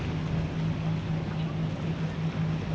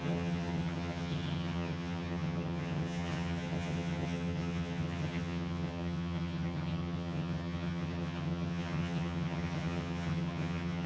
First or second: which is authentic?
first